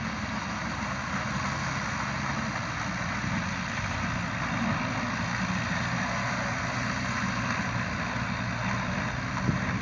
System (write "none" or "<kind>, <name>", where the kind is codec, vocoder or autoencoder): none